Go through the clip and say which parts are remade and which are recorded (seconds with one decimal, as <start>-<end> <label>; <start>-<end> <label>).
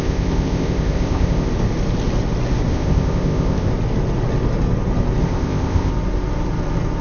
0.0-1.5 remade; 1.5-2.7 recorded; 2.7-3.7 remade; 3.7-5.2 recorded; 5.2-5.9 remade; 5.9-7.0 recorded